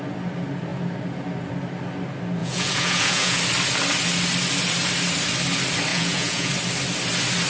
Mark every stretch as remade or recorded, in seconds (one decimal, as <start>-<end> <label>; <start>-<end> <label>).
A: 0.0-2.4 recorded; 2.4-3.4 remade; 3.4-5.9 recorded; 5.9-6.5 remade; 6.5-7.5 recorded